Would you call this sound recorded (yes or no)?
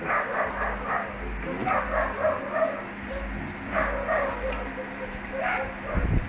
yes